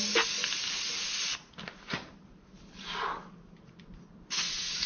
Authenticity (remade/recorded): recorded